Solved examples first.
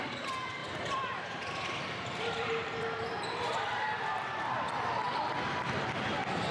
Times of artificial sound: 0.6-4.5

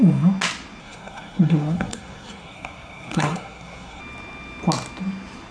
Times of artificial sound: 0.8-4.0

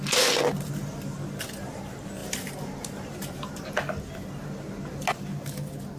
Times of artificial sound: 2.2-3.7

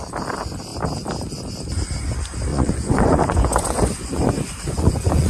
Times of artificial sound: 2.5-5.3